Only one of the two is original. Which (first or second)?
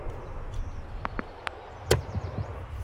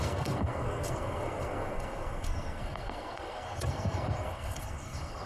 first